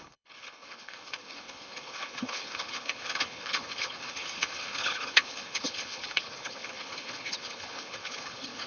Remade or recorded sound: remade